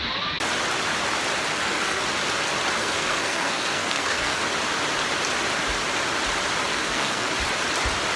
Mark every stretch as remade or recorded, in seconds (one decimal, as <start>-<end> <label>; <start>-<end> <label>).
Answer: 0.0-1.5 recorded; 1.5-2.0 remade; 2.0-2.8 recorded; 2.8-4.4 remade; 4.4-6.7 recorded; 6.7-7.3 remade; 7.3-8.2 recorded